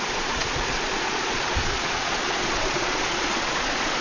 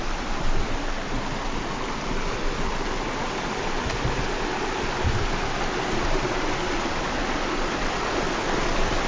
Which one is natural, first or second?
second